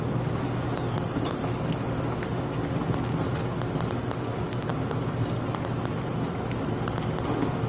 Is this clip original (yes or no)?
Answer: yes